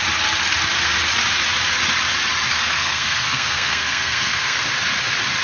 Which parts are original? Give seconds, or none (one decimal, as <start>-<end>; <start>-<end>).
0.0-2.5; 4.6-5.4